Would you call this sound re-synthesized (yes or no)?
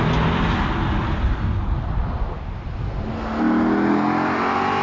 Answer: no